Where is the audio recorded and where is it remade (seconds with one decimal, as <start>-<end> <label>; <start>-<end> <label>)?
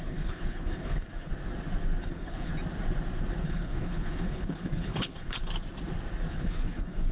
0.0-1.3 remade; 1.3-2.0 recorded; 2.0-2.5 remade; 2.5-3.4 recorded; 3.4-5.4 remade; 5.4-6.3 recorded; 6.3-7.1 remade